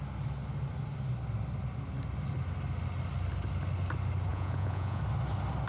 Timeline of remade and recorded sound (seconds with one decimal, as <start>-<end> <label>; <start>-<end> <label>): 0.0-4.3 recorded; 4.3-5.0 remade; 5.0-5.7 recorded